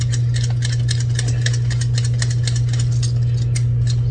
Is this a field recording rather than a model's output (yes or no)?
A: yes